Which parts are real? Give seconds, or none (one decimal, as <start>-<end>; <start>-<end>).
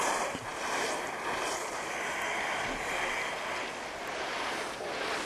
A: 0.0-5.3